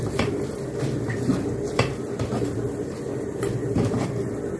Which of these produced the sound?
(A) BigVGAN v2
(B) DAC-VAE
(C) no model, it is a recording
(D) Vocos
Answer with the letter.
A